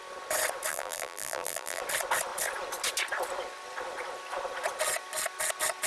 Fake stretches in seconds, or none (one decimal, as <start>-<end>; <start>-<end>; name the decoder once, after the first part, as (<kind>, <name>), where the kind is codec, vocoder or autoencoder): 0.7-1.8 (vocoder, BigVGAN v2)